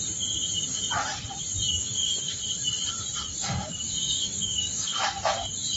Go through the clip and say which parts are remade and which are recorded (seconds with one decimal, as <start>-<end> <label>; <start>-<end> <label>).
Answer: 0.0-1.8 recorded; 1.8-2.4 remade; 2.4-3.3 recorded; 3.3-5.0 remade; 5.0-5.8 recorded